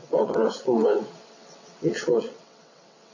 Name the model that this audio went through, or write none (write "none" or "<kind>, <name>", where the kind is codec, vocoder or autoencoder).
vocoder, WaveNeXt